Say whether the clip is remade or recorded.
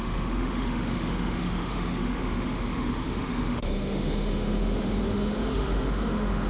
remade